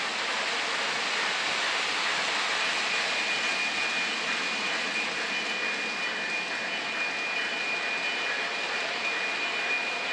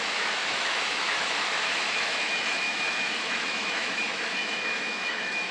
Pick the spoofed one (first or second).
second